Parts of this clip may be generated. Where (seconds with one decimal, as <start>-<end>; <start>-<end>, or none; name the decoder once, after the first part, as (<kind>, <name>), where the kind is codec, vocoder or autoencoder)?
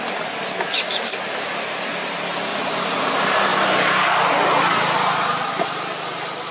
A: 2.5-3.1 (vocoder, Vocos)